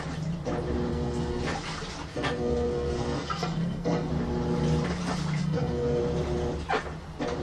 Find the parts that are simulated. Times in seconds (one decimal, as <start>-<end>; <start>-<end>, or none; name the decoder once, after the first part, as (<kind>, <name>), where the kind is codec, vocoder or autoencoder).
0.9-1.4 (codec, SNAC); 2.1-4.1; 5.4-6.0